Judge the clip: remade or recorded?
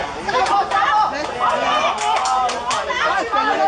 recorded